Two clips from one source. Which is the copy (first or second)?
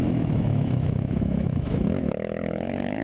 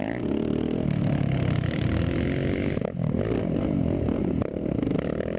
first